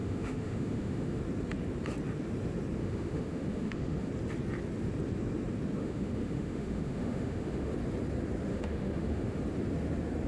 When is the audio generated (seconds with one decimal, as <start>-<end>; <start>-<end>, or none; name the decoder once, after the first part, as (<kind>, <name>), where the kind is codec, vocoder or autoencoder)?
0.0-1.2 (autoencoder, DAC-VAE); 2.8-4.1; 5.8-7.7; 8.5-9.4